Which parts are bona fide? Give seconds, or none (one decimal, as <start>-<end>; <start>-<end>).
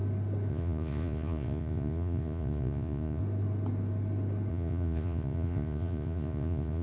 0.0-0.5; 3.2-4.5